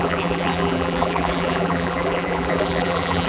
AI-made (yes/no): yes